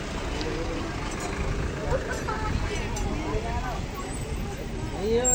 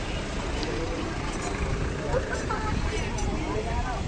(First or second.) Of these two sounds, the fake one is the second